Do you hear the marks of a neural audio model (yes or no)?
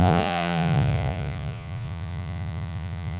yes